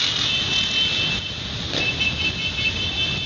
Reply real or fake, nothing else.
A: real